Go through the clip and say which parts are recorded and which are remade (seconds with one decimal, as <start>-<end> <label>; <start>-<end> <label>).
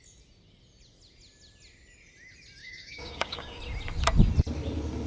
0.0-2.6 recorded; 2.6-3.6 remade; 3.6-5.1 recorded